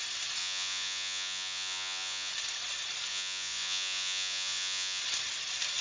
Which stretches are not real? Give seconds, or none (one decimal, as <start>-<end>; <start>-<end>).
0.4-2.3; 3.1-5.0